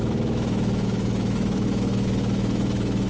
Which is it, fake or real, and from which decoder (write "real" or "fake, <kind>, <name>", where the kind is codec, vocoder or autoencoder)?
fake, autoencoder, DAC-VAE